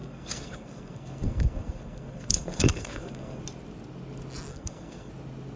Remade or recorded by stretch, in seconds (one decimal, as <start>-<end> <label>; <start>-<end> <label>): 0.0-3.4 remade; 3.4-4.5 recorded; 4.5-5.1 remade; 5.1-5.6 recorded

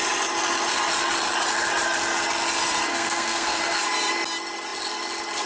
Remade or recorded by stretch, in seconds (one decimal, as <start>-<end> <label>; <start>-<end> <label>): 0.0-2.9 recorded; 2.9-3.6 remade; 3.6-5.5 recorded

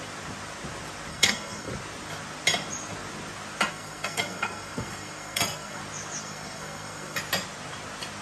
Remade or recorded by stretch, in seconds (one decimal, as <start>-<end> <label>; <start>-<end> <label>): 0.0-1.1 recorded; 1.1-1.7 remade; 1.7-3.7 recorded; 3.7-5.8 remade; 5.8-6.2 recorded; 6.2-7.2 remade; 7.2-8.2 recorded